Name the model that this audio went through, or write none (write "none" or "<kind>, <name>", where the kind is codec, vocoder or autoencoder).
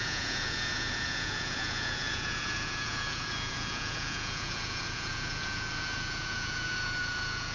vocoder, Vocos